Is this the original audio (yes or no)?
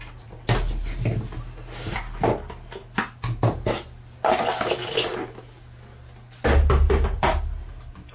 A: yes